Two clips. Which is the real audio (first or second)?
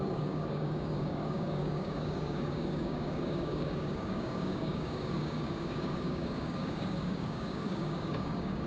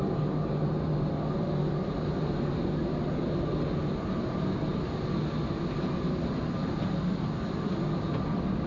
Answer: second